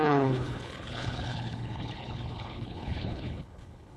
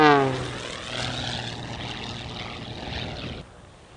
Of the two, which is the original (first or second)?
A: second